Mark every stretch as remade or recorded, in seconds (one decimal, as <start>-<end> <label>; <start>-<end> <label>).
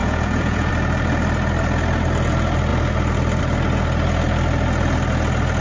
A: 0.0-0.7 remade; 0.7-5.6 recorded